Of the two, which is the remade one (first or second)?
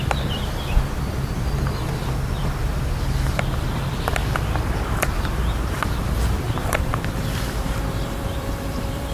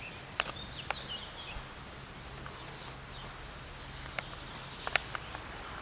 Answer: first